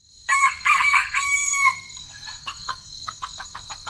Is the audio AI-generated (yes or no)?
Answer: yes